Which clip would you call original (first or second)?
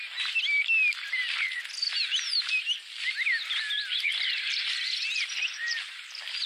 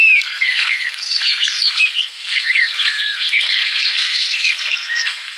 first